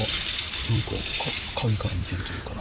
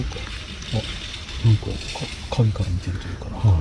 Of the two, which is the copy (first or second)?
first